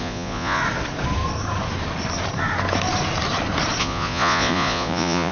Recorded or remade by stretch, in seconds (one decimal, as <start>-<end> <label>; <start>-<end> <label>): 0.0-0.6 remade; 0.6-3.8 recorded; 3.8-5.3 remade